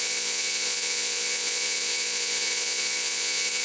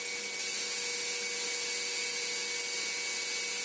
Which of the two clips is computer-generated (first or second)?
first